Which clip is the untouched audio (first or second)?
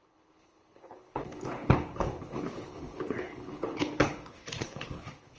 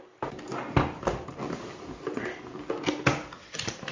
second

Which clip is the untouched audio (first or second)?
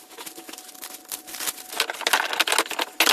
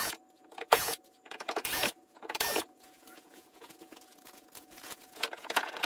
first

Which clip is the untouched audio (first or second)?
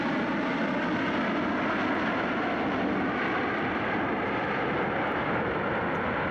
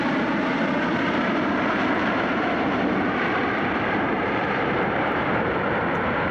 first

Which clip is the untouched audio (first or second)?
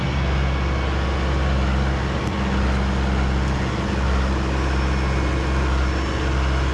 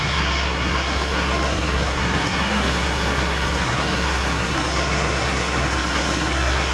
first